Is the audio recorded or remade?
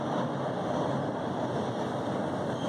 recorded